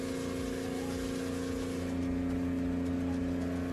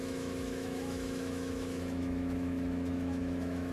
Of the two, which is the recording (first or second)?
first